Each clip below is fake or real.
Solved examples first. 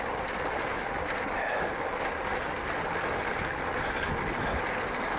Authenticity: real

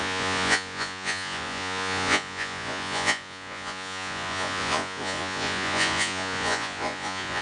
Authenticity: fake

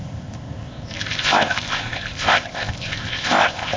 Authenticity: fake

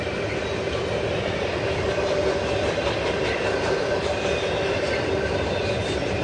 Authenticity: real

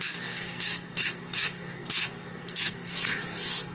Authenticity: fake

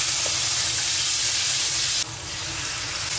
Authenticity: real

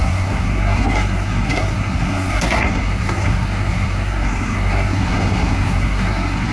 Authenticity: fake